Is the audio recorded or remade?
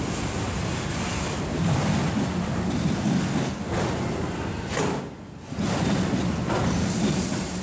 recorded